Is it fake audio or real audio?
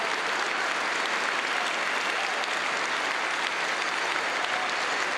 real